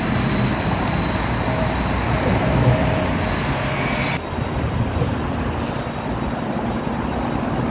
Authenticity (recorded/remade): recorded